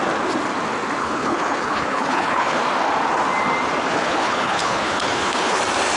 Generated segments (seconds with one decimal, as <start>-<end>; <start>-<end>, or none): 1.0-2.6; 3.9-5.6